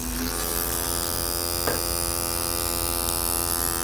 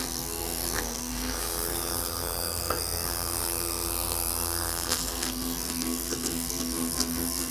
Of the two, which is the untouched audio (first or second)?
first